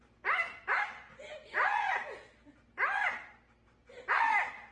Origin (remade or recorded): recorded